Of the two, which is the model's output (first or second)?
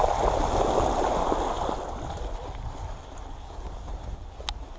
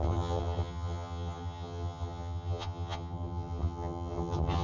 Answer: second